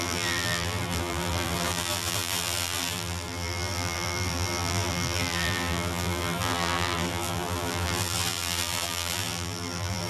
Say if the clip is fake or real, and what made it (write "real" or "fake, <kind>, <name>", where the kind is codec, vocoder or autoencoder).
fake, vocoder, BigVGAN v2